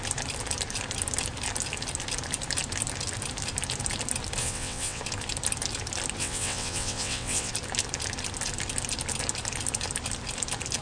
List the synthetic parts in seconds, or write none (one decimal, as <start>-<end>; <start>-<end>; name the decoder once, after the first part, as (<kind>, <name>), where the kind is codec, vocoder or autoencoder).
4.4-5.0 (vocoder, WaveNeXt); 6.2-7.5